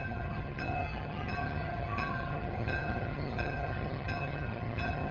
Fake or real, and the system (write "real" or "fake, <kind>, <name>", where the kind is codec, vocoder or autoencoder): fake, vocoder, HiFi-GAN